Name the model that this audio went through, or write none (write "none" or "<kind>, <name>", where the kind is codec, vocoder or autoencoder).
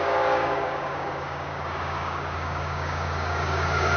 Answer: codec, DAC